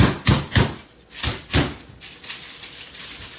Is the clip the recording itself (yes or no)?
yes